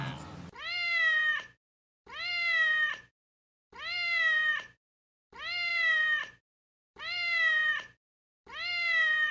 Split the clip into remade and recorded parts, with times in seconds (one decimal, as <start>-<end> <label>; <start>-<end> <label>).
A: 0.0-9.3 remade